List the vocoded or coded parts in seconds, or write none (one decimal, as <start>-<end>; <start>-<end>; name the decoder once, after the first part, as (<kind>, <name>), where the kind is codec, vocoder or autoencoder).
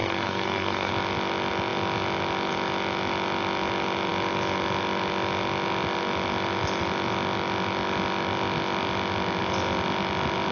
0.0-0.9 (codec, SNAC)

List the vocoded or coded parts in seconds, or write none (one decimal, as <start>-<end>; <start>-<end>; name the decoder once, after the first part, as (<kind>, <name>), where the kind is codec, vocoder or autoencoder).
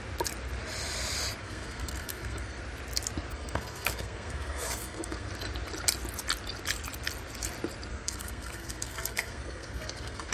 1.4-2.6 (codec, SNAC); 3.3-5.3; 7.9-10.3